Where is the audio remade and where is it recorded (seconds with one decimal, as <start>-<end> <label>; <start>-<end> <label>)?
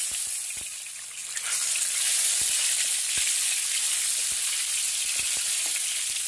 0.0-6.3 recorded